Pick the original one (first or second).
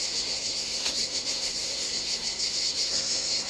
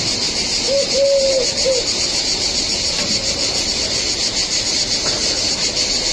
second